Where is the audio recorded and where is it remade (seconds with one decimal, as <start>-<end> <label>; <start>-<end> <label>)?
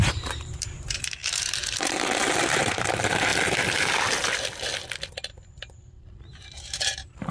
0.0-3.3 remade; 3.3-5.9 recorded; 5.9-7.3 remade